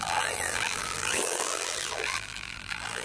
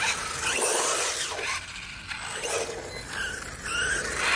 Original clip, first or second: second